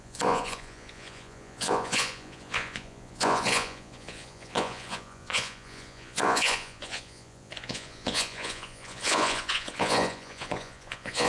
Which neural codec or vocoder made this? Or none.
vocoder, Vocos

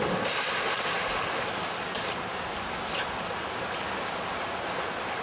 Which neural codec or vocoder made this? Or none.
none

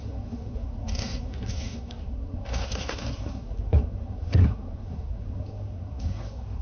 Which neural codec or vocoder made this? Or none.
codec, SNAC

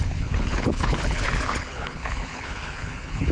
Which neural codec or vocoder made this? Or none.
codec, HILCodec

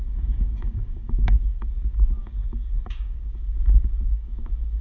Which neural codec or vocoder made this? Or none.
codec, DAC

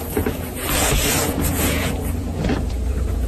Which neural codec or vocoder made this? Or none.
vocoder, Vocos